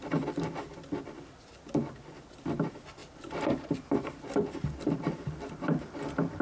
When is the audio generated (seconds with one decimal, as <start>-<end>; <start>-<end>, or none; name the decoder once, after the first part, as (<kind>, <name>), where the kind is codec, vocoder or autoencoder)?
3.0-5.8 (vocoder, BigVGAN v2)